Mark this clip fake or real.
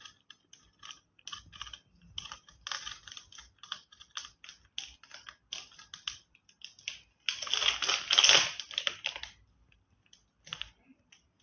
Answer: real